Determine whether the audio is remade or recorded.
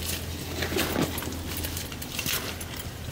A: remade